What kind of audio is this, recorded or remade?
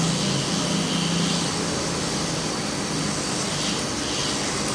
recorded